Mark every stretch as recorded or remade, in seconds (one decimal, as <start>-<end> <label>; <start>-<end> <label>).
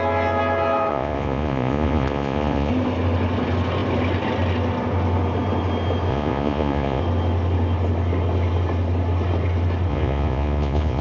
0.0-0.9 recorded; 0.9-2.7 remade; 2.7-6.1 recorded; 6.1-7.0 remade; 7.0-9.9 recorded; 9.9-11.0 remade